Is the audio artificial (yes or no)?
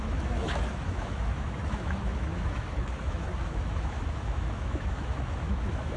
yes